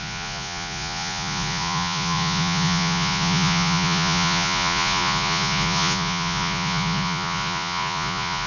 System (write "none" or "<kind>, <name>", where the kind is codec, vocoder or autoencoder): vocoder, Vocos